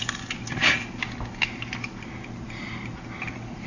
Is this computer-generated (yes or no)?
no